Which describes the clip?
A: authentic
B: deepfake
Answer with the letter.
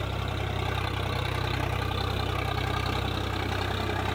A